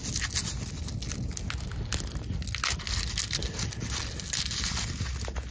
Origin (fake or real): real